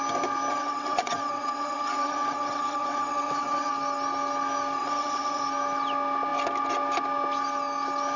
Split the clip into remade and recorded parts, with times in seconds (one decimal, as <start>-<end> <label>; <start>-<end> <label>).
0.0-0.5 recorded; 0.5-3.7 remade; 3.7-4.8 recorded; 4.8-5.4 remade; 5.4-8.2 recorded